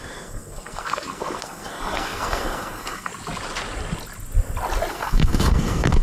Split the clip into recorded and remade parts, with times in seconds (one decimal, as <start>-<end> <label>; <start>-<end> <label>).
0.0-3.1 remade; 3.1-4.9 recorded; 4.9-6.0 remade